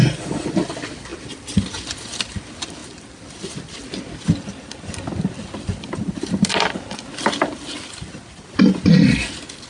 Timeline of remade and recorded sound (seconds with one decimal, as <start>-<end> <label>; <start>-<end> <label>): 0.0-1.1 recorded; 1.1-1.9 remade; 1.9-2.8 recorded; 2.8-5.3 remade; 5.3-9.7 recorded